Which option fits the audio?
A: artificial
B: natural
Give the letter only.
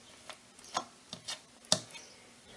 A